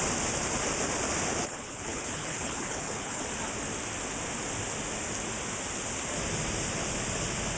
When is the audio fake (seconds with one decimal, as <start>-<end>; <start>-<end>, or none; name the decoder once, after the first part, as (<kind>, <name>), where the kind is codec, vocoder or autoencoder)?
1.4-3.2 (codec, HILCodec)